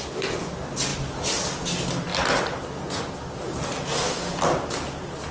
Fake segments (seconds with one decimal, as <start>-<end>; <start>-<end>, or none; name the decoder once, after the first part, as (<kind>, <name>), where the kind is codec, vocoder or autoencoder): none